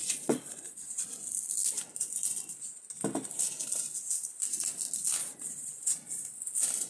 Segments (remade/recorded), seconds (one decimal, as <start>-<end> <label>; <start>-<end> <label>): 0.0-1.1 remade; 1.1-5.2 recorded; 5.2-6.1 remade; 6.1-6.9 recorded

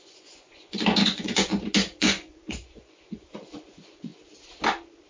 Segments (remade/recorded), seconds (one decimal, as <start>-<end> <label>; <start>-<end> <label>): 0.0-1.5 remade; 1.5-2.0 recorded; 2.0-4.1 remade; 4.1-5.1 recorded

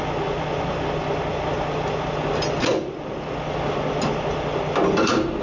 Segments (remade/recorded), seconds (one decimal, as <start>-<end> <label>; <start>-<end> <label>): 0.0-5.4 recorded

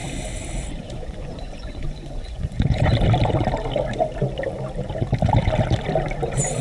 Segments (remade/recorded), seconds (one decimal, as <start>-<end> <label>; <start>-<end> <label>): 0.0-0.7 recorded; 0.7-2.9 remade; 2.9-6.6 recorded

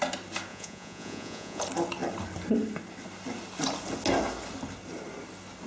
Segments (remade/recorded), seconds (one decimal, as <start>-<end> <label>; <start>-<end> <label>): 0.0-0.5 recorded; 0.5-1.6 remade; 1.6-5.7 recorded

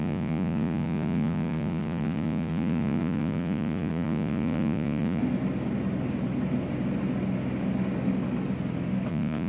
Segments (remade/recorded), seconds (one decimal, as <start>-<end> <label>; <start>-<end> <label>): 0.0-5.2 remade; 5.2-9.1 recorded; 9.1-9.5 remade

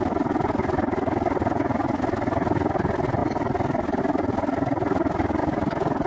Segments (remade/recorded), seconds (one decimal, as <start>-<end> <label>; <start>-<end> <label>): 0.0-1.4 recorded; 1.4-2.0 remade; 2.0-5.4 recorded; 5.4-6.1 remade

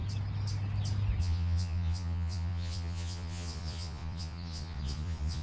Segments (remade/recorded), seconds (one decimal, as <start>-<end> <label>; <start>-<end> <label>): 0.0-1.2 recorded; 1.2-5.4 remade